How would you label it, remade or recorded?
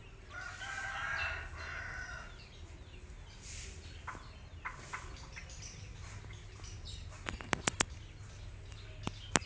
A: recorded